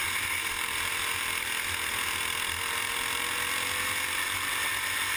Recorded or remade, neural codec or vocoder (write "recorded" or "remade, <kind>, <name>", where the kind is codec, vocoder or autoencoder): recorded